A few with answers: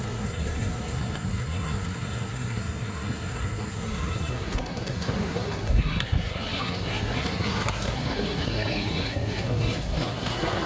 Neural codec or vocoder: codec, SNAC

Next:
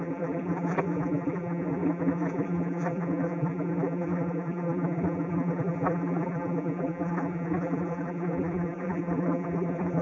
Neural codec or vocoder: vocoder, BigVGAN v2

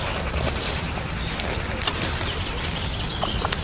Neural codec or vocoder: vocoder, BigVGAN v2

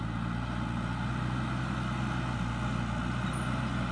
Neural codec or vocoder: none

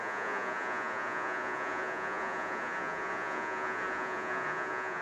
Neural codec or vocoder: vocoder, Vocos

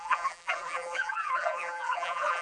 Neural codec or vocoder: vocoder, BigVGAN v2